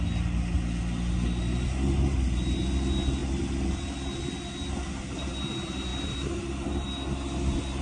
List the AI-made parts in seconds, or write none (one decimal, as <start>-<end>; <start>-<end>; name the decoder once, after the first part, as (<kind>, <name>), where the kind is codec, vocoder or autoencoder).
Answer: none